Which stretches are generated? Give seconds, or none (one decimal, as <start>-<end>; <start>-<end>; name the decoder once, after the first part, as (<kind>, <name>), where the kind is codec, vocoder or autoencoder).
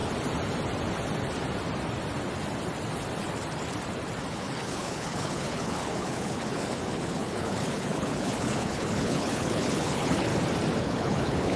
4.3-10.3 (codec, HILCodec); 10.8-11.6